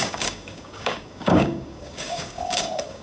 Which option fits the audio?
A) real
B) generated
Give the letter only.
B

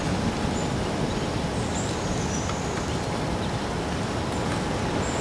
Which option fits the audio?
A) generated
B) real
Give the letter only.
B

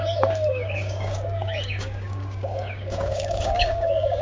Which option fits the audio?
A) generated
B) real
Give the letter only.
A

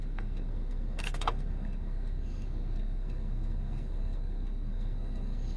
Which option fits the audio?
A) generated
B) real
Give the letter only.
A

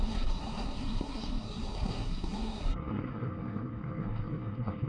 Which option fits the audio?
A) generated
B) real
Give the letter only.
A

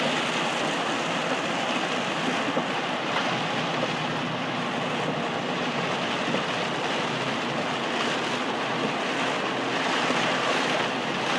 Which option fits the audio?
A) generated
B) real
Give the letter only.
B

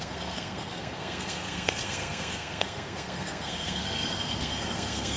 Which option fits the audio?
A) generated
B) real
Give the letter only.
A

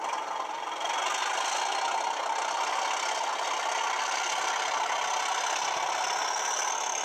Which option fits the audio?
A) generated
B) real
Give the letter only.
B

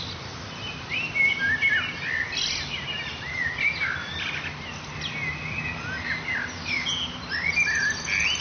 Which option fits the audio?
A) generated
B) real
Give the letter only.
B